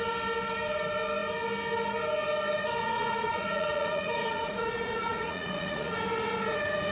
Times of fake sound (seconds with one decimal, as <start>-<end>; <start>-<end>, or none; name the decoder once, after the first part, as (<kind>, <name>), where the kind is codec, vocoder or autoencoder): 2.8-6.0 (vocoder, Vocos)